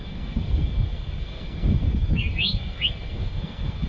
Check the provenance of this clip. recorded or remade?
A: remade